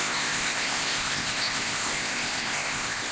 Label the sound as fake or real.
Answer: fake